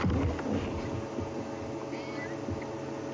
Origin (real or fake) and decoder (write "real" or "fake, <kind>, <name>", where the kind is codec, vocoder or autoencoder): real